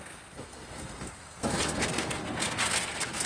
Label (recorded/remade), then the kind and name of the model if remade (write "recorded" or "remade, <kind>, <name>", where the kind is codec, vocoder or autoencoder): remade, codec, SNAC